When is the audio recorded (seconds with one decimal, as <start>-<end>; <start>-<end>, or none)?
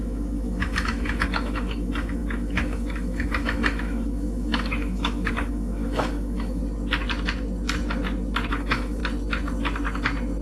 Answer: 6.6-8.5; 9.0-10.4